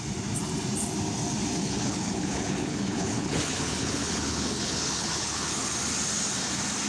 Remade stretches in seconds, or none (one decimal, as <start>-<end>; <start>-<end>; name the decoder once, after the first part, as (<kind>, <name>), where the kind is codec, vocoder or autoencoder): 1.6-5.7 (codec, HILCodec)